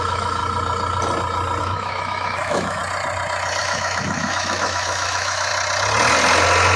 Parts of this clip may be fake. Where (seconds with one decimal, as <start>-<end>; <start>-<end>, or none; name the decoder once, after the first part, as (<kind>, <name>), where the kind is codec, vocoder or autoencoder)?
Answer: 0.0-0.4 (autoencoder, DAC-VAE); 1.6-2.8; 3.6-5.5

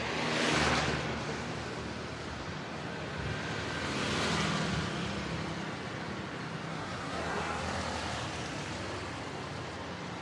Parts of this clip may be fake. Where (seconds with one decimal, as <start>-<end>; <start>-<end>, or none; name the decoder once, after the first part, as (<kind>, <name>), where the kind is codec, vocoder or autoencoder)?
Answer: 6.7-7.6 (codec, SNAC)

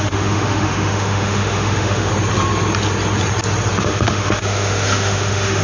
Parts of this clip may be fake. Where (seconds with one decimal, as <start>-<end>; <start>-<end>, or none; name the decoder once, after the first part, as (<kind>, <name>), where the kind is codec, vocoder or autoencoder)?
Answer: 0.0-2.1 (autoencoder, DAC-VAE); 3.8-5.6

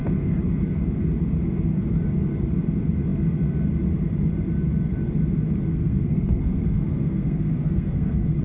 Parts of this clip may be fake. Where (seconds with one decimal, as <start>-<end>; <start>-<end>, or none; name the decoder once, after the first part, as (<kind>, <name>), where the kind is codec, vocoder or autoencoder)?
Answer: 5.7-8.4 (codec, SNAC)

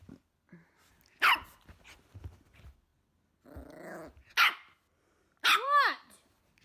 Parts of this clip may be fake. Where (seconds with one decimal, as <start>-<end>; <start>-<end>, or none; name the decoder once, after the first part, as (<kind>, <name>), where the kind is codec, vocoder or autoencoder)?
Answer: none